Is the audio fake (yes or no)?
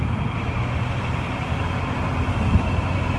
no